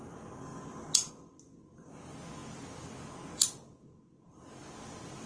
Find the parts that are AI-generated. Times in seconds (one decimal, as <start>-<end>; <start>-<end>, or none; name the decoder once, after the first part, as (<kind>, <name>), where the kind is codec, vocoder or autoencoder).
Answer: none